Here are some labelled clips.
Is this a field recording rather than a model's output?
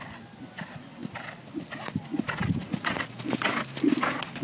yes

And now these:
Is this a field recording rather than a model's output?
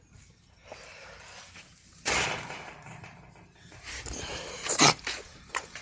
no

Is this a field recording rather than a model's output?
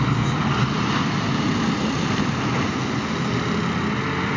yes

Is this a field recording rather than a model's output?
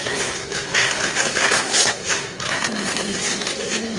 no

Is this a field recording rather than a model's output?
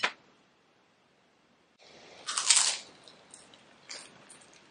yes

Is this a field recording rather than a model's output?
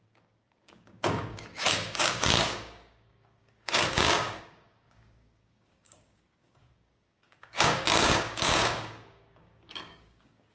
no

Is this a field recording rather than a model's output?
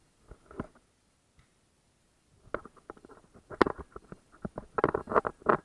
yes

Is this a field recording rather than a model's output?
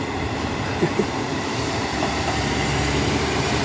no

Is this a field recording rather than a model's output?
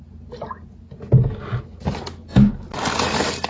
yes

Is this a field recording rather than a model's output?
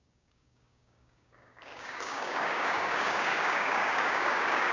no